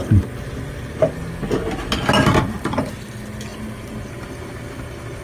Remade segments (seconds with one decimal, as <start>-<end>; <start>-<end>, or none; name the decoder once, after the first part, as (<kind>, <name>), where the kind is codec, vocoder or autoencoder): none